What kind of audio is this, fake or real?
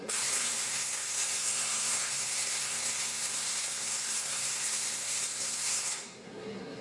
fake